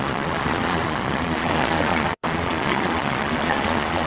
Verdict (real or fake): fake